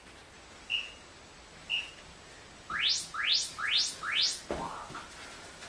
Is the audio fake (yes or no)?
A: no